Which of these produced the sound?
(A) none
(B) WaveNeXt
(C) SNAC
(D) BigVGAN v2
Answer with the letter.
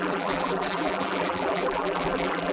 D